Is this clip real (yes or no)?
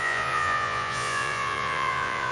no